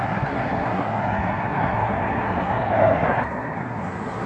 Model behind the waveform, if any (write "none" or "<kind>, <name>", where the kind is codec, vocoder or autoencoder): codec, SNAC